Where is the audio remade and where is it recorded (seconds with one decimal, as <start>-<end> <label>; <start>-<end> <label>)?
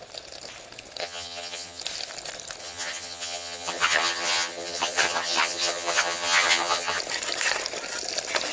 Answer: 0.0-1.0 recorded; 1.0-1.8 remade; 1.8-2.6 recorded; 2.6-7.0 remade; 7.0-8.5 recorded